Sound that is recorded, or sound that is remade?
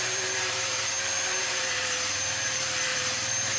remade